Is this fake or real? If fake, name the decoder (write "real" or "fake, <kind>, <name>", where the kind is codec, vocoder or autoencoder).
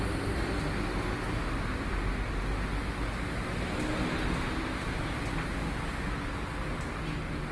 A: real